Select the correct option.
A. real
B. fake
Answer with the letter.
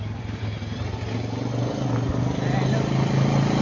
A